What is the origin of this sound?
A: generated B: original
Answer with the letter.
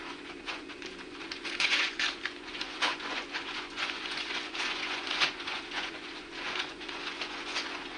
A